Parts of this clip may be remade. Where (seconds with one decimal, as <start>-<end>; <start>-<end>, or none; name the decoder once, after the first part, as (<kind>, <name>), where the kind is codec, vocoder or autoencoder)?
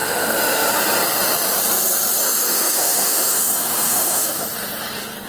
0.0-0.7 (autoencoder, DAC-VAE); 2.2-4.4